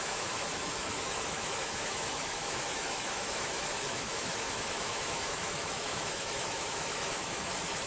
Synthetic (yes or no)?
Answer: yes